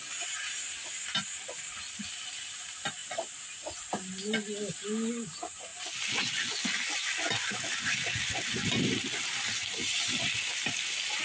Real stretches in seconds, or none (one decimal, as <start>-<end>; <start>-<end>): 0.0-11.2